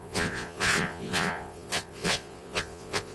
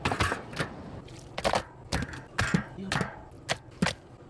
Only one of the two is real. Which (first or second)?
second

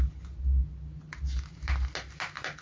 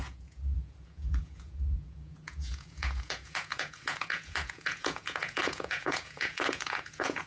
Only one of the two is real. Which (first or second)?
first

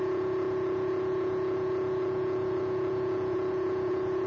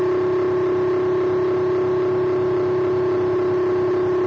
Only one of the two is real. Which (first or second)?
second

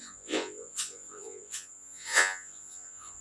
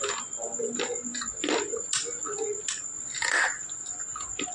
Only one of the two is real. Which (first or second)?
second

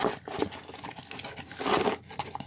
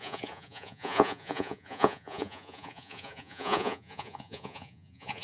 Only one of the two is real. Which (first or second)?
first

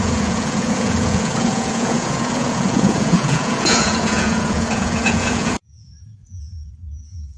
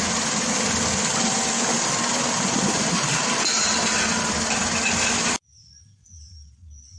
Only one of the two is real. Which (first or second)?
second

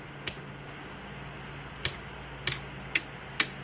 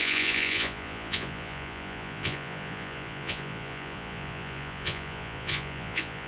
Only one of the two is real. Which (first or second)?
first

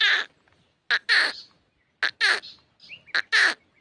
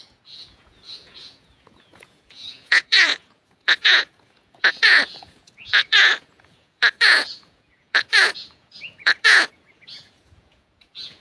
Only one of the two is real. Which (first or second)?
first